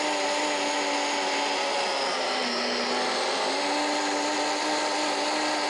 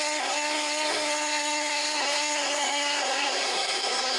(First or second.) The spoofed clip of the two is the second